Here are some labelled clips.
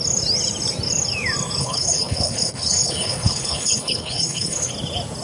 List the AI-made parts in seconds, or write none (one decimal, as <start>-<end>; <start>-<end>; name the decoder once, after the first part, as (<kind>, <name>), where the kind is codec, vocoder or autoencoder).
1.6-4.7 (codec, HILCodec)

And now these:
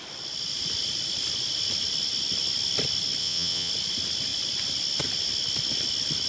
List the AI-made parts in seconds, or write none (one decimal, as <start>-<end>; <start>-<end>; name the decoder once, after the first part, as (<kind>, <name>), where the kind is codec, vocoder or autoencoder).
3.2-3.7 (vocoder, WaveNeXt)

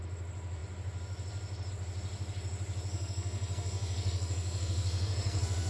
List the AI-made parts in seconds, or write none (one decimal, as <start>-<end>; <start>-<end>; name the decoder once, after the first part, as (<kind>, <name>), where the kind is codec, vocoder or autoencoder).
2.9-5.7 (codec, SNAC)

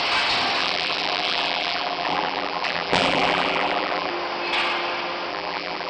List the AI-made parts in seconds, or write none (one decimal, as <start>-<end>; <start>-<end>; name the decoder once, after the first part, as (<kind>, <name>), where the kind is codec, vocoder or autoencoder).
0.6-4.1 (vocoder, BigVGAN v2); 5.3-5.9

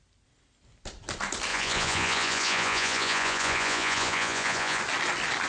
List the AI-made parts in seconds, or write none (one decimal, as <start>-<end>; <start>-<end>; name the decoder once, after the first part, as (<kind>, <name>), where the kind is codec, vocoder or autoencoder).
1.5-4.8 (vocoder, Vocos)

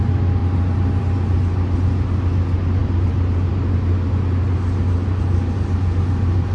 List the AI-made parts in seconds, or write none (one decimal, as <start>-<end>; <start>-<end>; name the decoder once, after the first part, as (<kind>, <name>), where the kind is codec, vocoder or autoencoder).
none

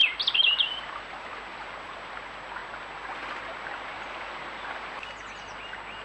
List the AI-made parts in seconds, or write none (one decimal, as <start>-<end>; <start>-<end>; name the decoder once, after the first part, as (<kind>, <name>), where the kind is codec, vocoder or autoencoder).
none